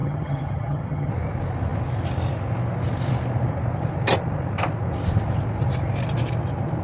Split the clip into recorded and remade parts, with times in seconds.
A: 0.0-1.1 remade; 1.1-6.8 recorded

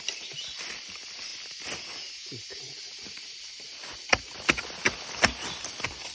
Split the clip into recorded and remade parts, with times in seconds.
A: 0.0-1.3 remade; 1.3-3.3 recorded; 3.3-6.1 remade

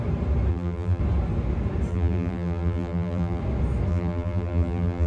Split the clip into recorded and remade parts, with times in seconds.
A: 0.0-0.5 recorded; 0.5-1.0 remade; 1.0-1.9 recorded; 1.9-3.4 remade; 3.4-3.9 recorded; 3.9-5.1 remade

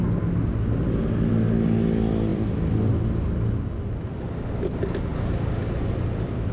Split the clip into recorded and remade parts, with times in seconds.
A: 0.0-2.3 recorded; 2.3-2.9 remade; 2.9-5.1 recorded; 5.1-6.5 remade

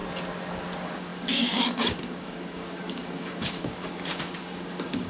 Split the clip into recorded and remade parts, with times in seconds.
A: 0.0-0.5 recorded; 0.5-5.1 remade